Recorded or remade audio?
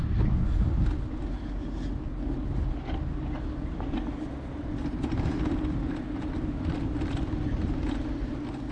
recorded